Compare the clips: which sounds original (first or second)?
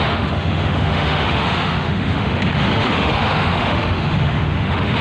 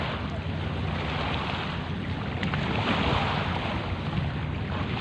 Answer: second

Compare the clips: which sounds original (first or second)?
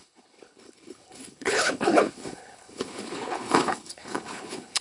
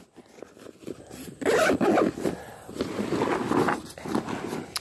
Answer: second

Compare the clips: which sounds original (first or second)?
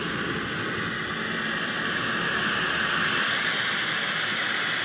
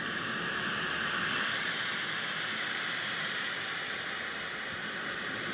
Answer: first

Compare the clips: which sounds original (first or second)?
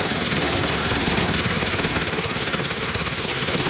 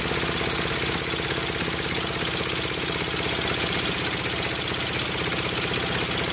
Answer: second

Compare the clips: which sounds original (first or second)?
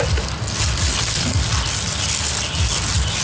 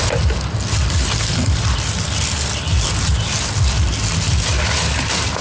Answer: first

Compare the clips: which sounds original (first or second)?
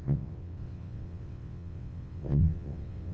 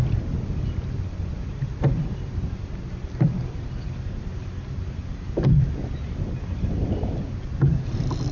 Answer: second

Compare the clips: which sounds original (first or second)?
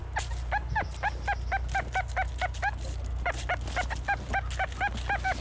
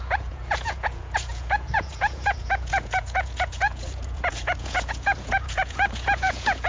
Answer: first